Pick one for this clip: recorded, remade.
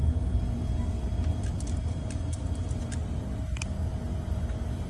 recorded